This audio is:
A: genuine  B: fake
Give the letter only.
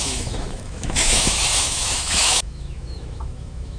B